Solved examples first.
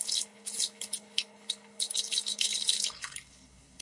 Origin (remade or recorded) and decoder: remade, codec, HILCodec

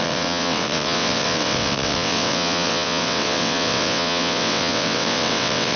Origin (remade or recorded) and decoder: remade, vocoder, WaveNeXt